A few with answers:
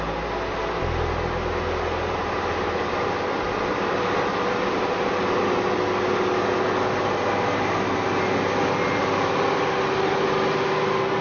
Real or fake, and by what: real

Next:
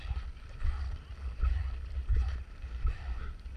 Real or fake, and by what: real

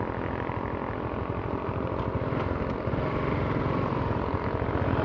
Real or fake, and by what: real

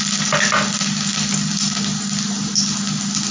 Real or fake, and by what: real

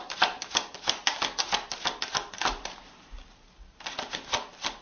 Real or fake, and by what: real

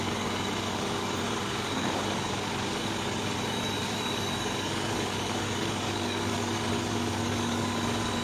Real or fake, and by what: fake, codec, DAC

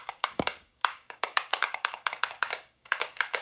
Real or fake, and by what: fake, codec, DAC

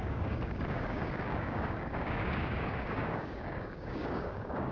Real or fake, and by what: fake, codec, DAC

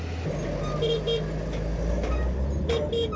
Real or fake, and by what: real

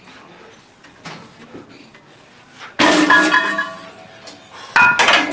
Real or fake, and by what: real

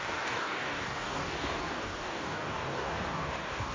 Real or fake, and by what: fake, codec, DAC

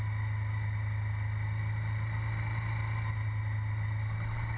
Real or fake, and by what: real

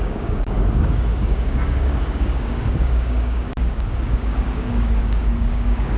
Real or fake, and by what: fake, codec, DAC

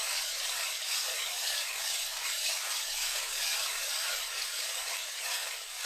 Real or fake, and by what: fake, codec, DAC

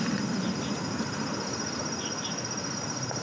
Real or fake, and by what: real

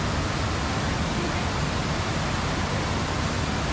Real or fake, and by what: real